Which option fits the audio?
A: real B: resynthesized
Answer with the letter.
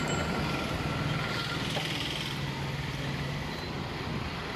A